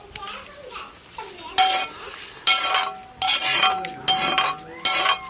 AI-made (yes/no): no